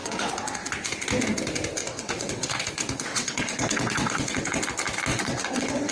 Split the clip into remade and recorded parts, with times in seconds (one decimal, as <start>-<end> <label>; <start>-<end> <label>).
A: 0.0-0.7 remade; 0.7-1.8 recorded; 1.8-2.6 remade; 2.6-3.1 recorded; 3.1-4.6 remade; 4.6-5.1 recorded; 5.1-5.9 remade